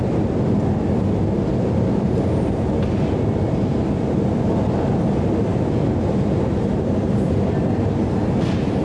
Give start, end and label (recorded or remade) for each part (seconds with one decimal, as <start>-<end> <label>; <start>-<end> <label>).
0.0-8.8 recorded

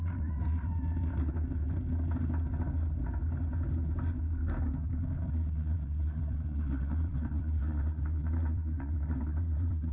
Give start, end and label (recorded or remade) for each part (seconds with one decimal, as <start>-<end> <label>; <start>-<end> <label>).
0.0-0.4 remade; 0.4-5.3 recorded; 5.3-9.9 remade

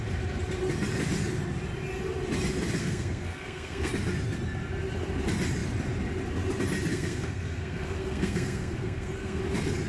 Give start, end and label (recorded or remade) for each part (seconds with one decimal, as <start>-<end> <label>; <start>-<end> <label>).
0.0-2.8 recorded; 2.8-3.9 remade; 3.9-6.9 recorded; 6.9-9.4 remade; 9.4-9.9 recorded

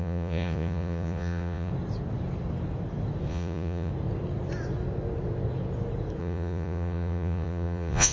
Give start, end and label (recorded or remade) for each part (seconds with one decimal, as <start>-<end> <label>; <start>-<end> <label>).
0.0-1.7 remade; 1.7-3.3 recorded; 3.3-3.9 remade; 3.9-6.2 recorded; 6.2-8.1 remade